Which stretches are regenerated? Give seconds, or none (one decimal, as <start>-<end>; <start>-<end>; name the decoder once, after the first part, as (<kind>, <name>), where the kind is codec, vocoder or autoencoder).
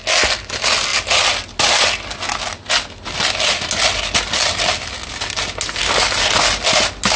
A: none